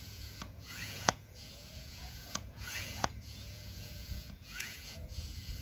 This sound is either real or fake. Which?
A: fake